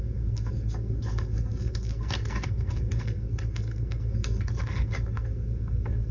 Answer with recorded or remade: remade